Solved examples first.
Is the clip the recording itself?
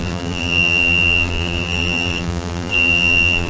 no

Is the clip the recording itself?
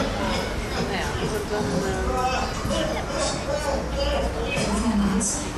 yes